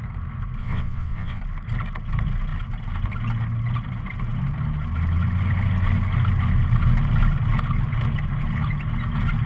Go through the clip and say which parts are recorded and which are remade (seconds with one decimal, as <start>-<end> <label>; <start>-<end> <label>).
0.0-0.6 recorded; 0.6-1.4 remade; 1.4-9.5 recorded